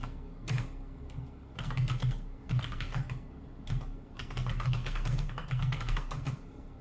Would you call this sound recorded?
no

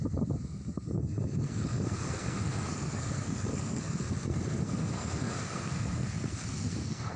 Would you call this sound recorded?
no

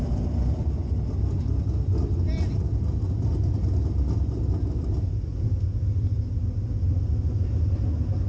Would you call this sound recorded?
yes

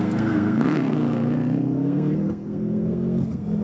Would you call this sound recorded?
no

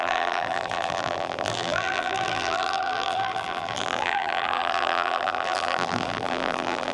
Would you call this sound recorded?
no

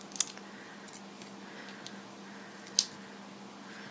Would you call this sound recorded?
yes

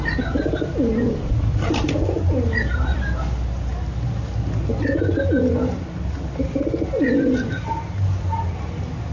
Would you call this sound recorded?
yes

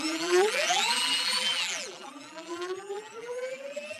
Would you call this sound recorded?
no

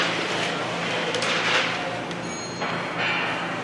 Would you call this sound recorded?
yes